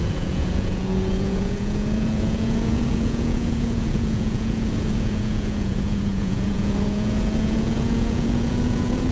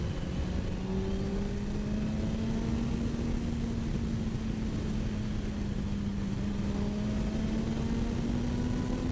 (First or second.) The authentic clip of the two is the second